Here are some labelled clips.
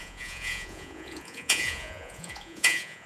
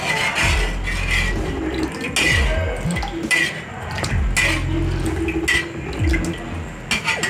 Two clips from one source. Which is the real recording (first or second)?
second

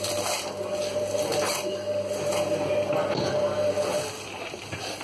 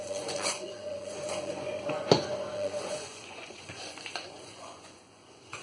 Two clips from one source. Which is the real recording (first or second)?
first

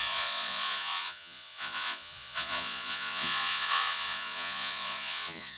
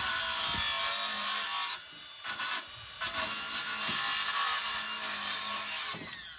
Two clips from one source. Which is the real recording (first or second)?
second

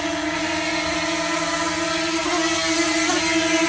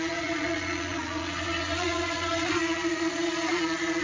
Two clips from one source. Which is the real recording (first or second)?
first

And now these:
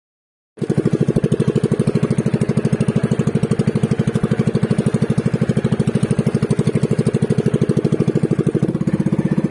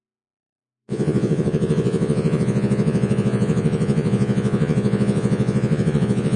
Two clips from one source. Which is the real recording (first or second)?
first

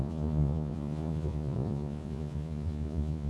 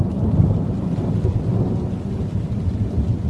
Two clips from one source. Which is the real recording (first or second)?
second